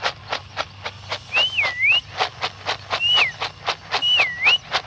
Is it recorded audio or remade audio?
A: recorded